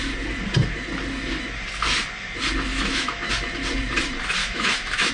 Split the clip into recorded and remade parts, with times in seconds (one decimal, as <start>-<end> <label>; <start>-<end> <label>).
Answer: 0.0-2.7 recorded; 2.7-3.3 remade; 3.3-4.4 recorded; 4.4-5.1 remade